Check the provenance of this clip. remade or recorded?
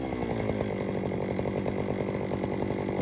recorded